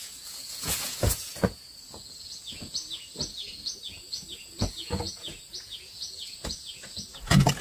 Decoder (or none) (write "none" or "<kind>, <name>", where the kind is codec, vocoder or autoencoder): vocoder, Vocos